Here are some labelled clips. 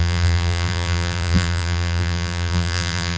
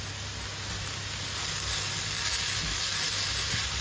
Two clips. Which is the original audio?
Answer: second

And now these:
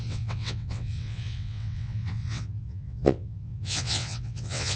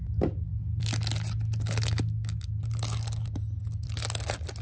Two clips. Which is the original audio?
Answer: second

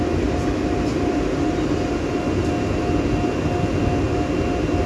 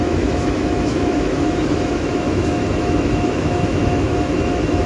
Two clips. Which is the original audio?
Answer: first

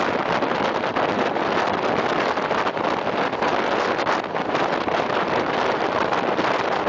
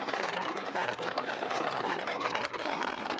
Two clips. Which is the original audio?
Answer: first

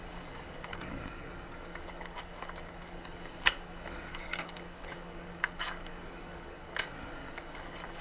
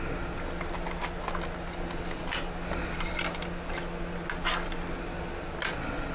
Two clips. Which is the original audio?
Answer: second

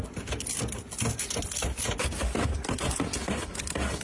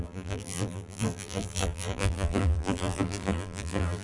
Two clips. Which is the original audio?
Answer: first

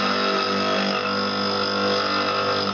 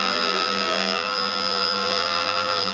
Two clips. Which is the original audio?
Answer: first